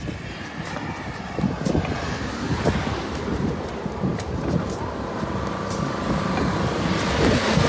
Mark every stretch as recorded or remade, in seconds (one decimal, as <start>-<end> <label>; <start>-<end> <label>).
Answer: 0.0-7.7 recorded